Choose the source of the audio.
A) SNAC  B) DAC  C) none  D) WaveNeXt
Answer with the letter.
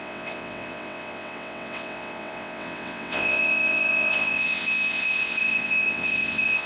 D